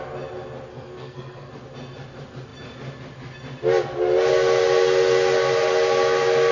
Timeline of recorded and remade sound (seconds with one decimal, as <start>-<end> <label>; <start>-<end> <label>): 0.0-0.7 recorded; 0.7-1.5 remade; 1.5-6.5 recorded